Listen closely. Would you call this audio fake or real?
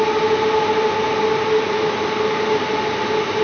real